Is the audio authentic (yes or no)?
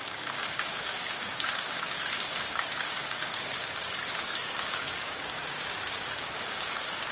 no